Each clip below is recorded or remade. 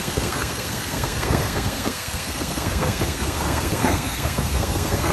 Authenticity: remade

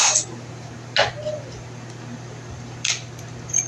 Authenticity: recorded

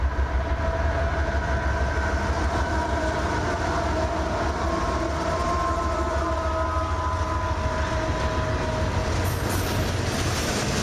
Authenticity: recorded